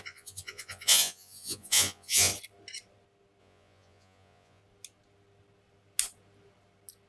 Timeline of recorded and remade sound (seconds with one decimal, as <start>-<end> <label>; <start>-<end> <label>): 0.0-2.3 remade; 2.3-3.4 recorded; 3.4-4.6 remade; 4.6-7.1 recorded

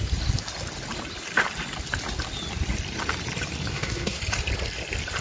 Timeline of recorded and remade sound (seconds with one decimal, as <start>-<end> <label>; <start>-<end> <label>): 0.0-3.7 recorded; 3.7-4.2 remade; 4.2-5.2 recorded